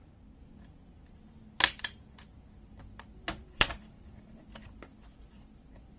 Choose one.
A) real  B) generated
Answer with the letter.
B